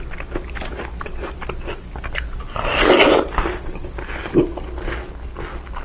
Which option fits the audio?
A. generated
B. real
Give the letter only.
B